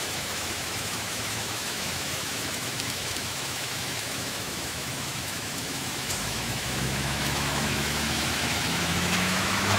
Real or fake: fake